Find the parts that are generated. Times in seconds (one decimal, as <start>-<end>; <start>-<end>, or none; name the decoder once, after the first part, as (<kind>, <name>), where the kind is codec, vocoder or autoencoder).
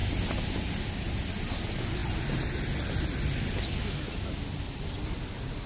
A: none